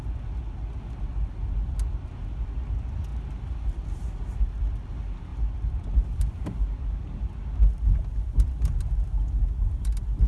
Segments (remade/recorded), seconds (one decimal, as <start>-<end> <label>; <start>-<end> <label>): 0.0-10.3 recorded